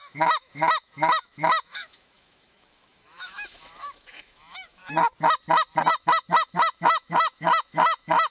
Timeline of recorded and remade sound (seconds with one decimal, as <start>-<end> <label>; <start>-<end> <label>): 0.0-4.8 remade; 4.8-5.9 recorded; 5.9-8.3 remade